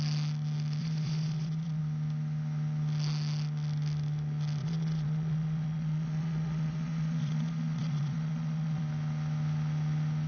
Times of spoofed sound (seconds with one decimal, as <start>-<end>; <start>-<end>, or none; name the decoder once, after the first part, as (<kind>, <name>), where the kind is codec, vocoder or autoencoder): 0.8-1.8 (vocoder, Vocos); 4.6-8.8